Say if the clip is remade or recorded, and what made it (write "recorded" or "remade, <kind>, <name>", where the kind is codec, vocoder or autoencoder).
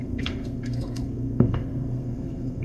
remade, codec, SNAC